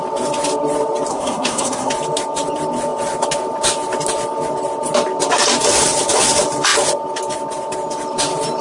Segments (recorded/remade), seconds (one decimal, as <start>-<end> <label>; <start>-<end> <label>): 0.0-1.1 recorded; 1.1-1.9 remade; 1.9-8.6 recorded